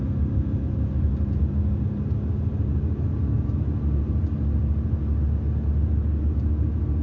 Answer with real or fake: real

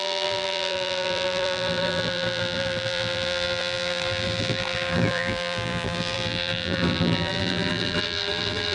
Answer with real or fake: fake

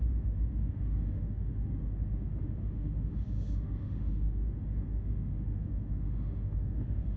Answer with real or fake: fake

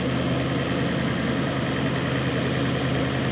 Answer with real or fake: real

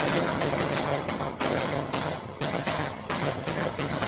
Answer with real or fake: fake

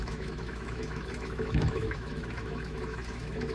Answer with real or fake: fake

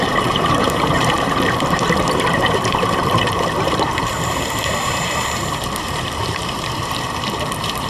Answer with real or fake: fake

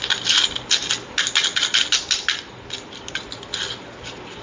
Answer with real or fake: real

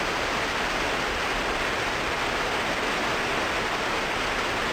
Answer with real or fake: real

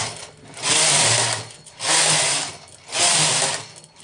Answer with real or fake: real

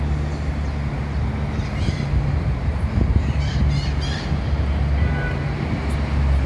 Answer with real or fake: real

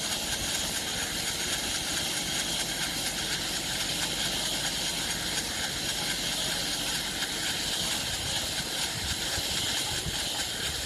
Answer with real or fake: real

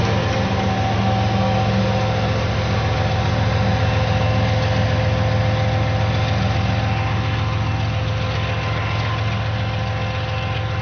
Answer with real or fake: real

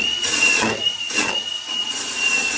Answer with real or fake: fake